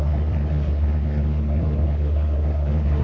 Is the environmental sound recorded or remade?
remade